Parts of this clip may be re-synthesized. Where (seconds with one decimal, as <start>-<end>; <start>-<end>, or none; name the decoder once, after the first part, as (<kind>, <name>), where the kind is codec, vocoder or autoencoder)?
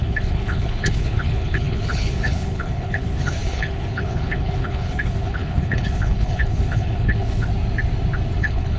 0.0-7.5 (codec, HILCodec); 8.4-8.8